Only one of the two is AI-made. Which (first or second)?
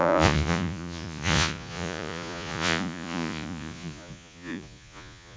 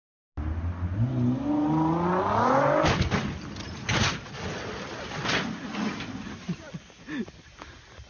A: first